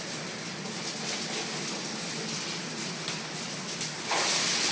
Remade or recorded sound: recorded